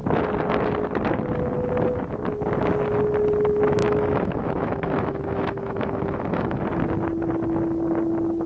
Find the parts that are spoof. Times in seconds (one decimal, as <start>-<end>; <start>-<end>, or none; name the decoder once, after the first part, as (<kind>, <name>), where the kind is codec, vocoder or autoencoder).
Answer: 3.8-6.6 (autoencoder, DAC-VAE)